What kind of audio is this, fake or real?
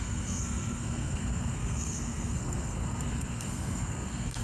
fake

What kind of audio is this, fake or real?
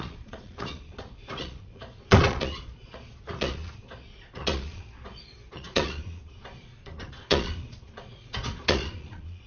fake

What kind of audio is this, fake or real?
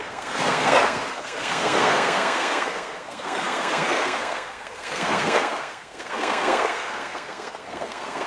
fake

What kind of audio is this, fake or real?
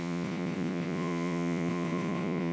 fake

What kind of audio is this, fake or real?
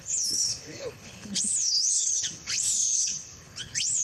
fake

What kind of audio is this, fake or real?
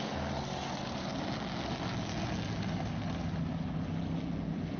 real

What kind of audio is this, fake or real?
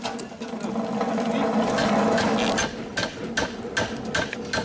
real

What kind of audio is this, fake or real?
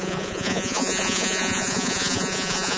fake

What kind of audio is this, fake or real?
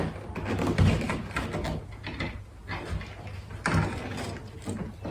real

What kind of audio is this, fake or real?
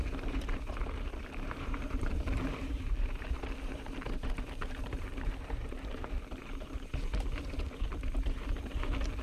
fake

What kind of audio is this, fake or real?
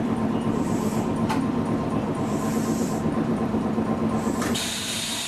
fake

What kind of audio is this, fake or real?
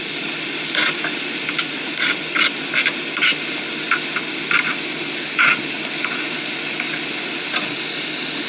real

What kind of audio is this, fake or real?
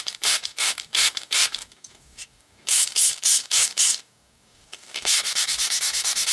fake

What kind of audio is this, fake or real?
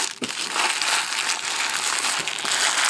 real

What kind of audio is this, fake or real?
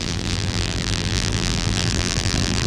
fake